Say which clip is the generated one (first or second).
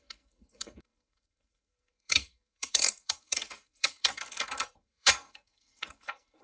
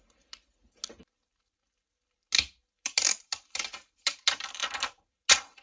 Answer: first